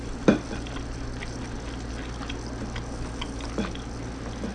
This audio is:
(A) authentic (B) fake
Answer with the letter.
A